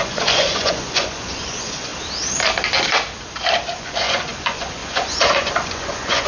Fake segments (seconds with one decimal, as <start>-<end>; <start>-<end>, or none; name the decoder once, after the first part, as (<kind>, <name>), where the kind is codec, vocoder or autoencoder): 0.0-1.9 (vocoder, Vocos); 3.8-6.3